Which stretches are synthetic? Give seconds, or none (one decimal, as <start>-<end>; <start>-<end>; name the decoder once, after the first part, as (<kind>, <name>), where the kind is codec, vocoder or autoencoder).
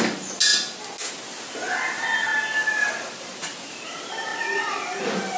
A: 4.3-5.4 (vocoder, BigVGAN v2)